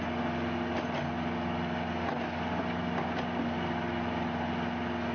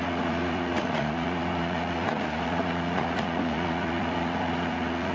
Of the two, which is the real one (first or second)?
first